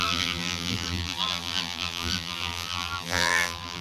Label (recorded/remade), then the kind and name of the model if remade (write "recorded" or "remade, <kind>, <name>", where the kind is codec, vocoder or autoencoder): remade, vocoder, BigVGAN v2